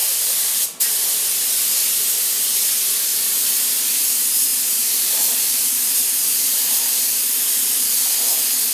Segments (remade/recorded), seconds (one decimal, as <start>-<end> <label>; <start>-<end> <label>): 0.0-0.8 remade; 0.8-3.1 recorded; 3.1-3.9 remade; 3.9-4.5 recorded; 4.5-7.4 remade; 7.4-8.7 recorded